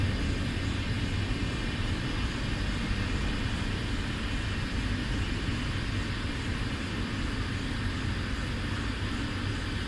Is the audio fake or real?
real